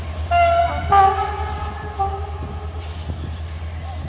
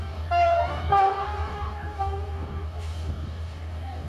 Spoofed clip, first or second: second